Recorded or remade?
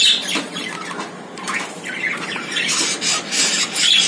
remade